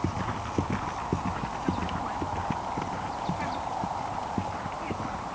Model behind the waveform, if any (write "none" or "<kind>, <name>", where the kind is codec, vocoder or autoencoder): none